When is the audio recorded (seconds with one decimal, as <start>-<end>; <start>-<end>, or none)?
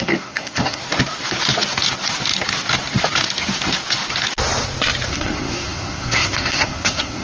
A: 0.8-5.1